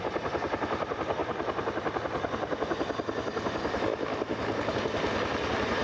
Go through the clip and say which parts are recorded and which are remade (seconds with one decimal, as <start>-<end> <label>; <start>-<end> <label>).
0.0-5.8 recorded